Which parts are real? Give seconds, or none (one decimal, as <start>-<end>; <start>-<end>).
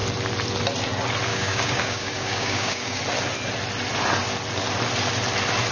0.0-1.3; 3.0-5.7